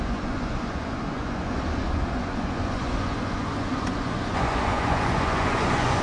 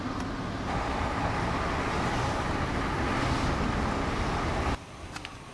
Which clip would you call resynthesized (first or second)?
first